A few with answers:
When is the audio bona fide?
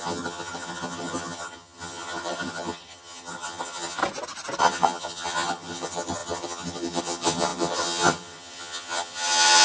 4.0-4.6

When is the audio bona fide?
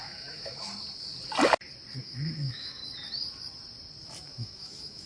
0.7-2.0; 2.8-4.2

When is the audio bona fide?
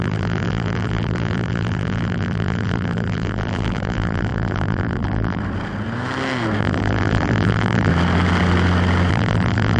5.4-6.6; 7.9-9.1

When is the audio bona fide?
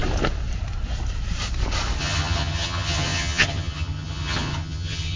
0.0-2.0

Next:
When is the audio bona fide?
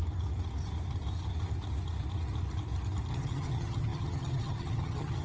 0.0-3.1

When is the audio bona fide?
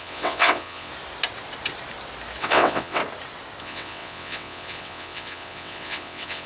0.9-2.4; 3.0-3.6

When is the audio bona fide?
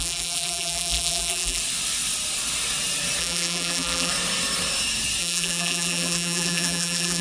1.6-3.2; 4.1-5.2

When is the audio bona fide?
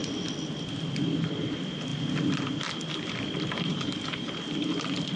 0.0-3.7; 4.3-5.2